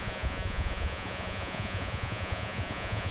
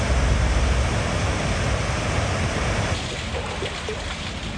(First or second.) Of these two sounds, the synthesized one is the first